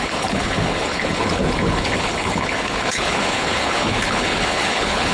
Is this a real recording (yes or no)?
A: no